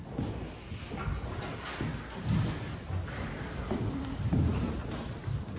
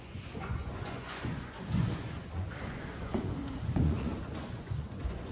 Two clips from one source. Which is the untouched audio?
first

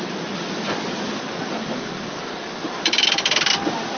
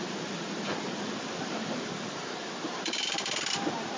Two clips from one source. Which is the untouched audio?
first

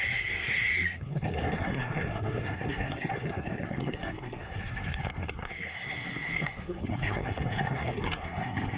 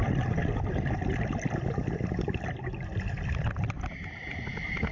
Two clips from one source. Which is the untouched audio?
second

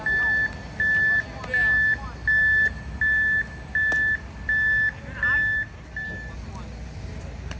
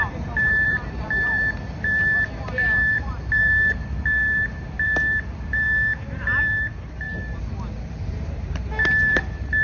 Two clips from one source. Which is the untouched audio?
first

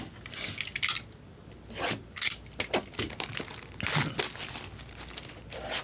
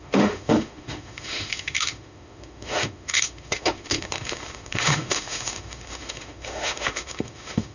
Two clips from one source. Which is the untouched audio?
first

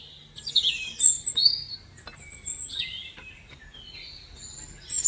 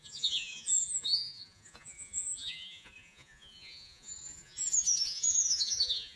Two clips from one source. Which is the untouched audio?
first